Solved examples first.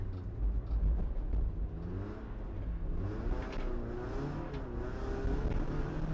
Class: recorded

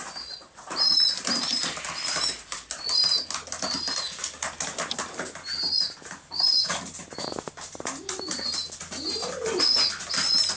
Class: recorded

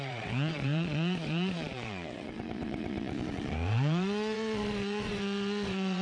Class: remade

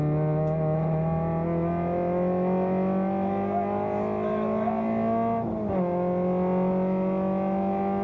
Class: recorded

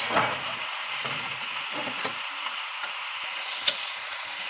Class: remade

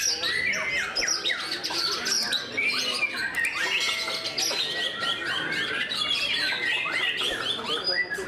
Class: recorded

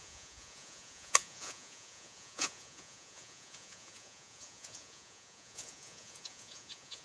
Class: remade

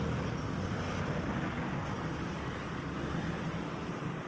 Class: recorded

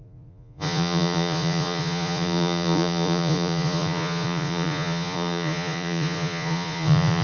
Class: remade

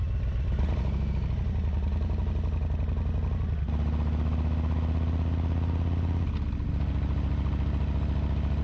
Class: recorded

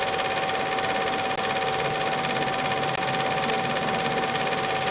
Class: recorded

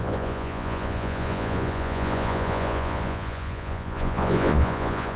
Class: remade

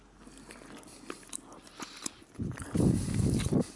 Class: recorded